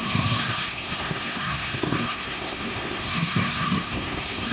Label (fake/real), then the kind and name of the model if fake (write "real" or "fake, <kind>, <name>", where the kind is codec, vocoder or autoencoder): fake, codec, SNAC